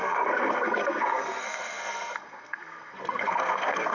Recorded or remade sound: remade